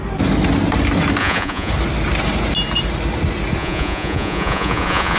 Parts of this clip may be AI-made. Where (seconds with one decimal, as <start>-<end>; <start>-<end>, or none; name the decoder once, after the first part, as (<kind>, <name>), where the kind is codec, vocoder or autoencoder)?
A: 1.2-1.7 (vocoder, Vocos); 3.6-5.2